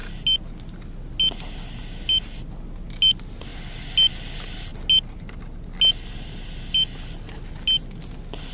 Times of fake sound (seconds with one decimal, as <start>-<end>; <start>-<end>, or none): none